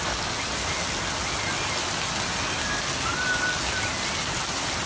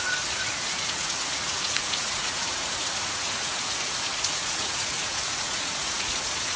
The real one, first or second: first